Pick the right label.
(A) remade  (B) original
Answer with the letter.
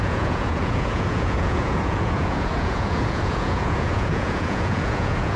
A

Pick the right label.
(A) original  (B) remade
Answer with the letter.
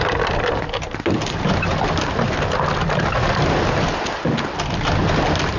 A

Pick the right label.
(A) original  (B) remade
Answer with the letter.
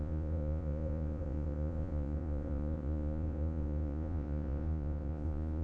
B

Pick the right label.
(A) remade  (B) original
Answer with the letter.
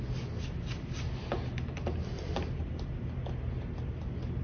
B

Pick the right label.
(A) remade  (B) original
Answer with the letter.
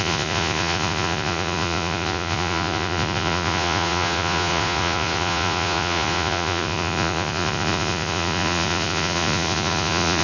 A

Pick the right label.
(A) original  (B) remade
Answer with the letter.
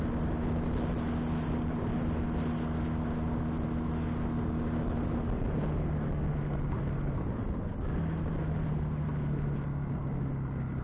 A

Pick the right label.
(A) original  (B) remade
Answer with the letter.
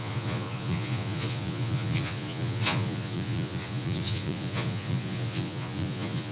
B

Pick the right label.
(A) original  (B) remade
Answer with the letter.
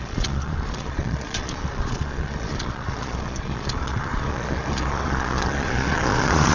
B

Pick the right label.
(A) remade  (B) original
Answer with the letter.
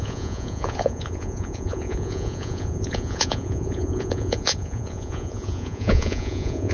A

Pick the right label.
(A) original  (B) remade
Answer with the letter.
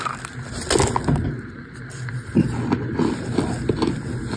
A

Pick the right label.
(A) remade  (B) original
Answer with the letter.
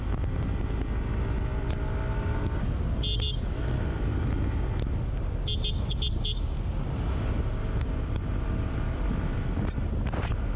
B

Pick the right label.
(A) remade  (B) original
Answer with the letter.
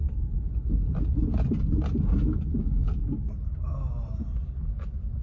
B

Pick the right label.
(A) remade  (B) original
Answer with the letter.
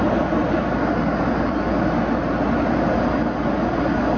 B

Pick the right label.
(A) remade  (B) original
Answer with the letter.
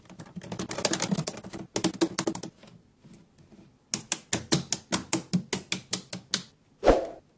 B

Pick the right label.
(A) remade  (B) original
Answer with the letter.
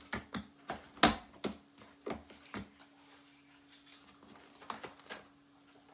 B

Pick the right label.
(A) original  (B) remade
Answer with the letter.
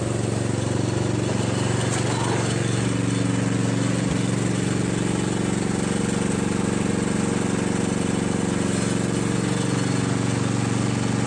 A